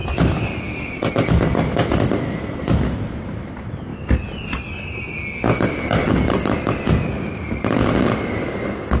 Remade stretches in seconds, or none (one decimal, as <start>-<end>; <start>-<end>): 7.1-7.6

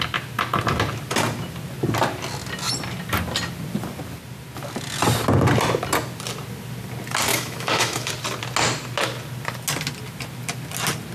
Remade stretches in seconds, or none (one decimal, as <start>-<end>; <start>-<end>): 7.3-8.1

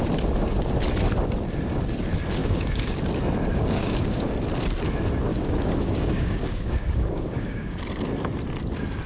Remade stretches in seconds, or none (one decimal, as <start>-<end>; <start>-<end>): 2.4-3.0; 3.5-4.3; 5.3-7.8

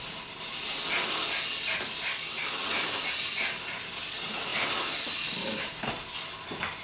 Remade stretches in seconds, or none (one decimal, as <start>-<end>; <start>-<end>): none